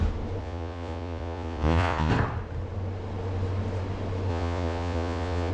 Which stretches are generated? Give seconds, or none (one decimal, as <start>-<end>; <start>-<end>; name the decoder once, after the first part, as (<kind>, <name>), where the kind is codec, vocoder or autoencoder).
0.4-2.1 (vocoder, Vocos); 4.3-5.5

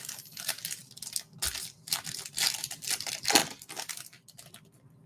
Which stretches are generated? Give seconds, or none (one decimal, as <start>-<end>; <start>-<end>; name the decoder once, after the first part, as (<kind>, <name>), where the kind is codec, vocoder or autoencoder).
none

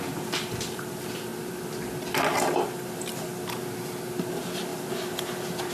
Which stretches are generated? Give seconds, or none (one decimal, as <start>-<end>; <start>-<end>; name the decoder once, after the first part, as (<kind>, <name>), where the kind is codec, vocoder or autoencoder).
0.0-1.3 (vocoder, BigVGAN v2); 2.4-3.3; 4.3-5.7

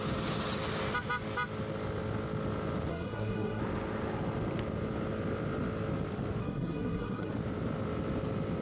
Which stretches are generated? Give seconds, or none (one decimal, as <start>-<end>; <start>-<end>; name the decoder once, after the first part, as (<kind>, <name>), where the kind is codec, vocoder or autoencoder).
2.9-3.6 (codec, SNAC); 6.4-7.3

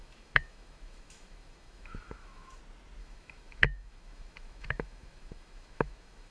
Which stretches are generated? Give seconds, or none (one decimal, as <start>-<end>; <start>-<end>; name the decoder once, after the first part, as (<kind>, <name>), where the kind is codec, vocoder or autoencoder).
0.0-2.6 (autoencoder, DAC-VAE); 3.0-6.3

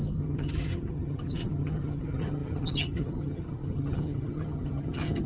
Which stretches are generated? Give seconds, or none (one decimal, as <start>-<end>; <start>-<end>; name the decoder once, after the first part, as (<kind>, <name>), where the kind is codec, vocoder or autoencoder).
0.0-5.3 (vocoder, HiFi-GAN)

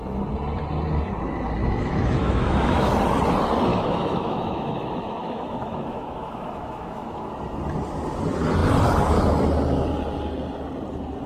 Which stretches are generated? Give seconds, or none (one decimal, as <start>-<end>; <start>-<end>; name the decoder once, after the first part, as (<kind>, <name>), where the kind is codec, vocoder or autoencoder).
1.6-2.9 (autoencoder, DAC-VAE); 3.7-7.3